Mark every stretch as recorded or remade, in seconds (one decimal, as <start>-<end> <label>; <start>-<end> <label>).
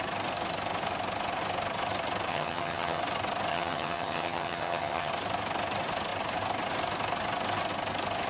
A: 0.0-2.3 recorded; 2.3-3.0 remade; 3.0-3.5 recorded; 3.5-5.1 remade; 5.1-8.3 recorded